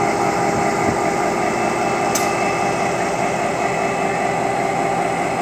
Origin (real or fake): real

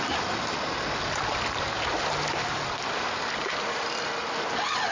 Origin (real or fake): real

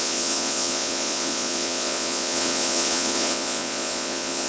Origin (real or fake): fake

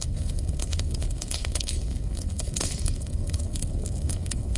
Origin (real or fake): fake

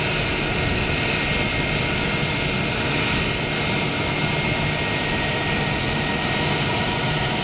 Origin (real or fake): real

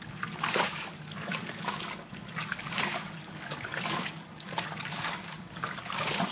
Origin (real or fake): fake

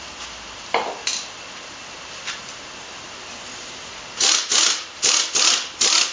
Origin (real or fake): real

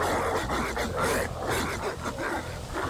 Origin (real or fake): real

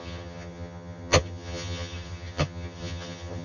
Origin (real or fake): fake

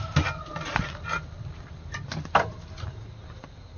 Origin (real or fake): real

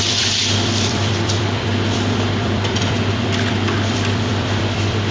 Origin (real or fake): fake